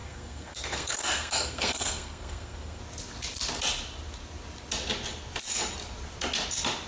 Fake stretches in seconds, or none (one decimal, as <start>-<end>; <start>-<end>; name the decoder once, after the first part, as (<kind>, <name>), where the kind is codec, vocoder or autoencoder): 0.0-2.8 (codec, SNAC)